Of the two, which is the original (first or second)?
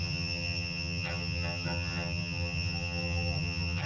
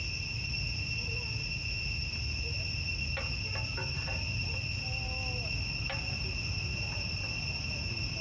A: second